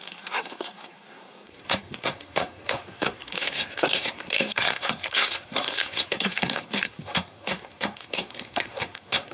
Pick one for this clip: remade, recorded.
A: remade